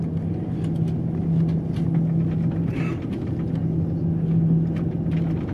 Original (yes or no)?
yes